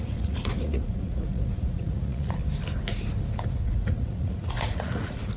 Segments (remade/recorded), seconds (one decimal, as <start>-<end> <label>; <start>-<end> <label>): 0.0-2.4 remade; 2.4-3.5 recorded; 3.5-5.4 remade